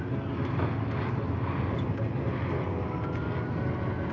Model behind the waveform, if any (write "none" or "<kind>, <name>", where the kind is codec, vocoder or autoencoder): none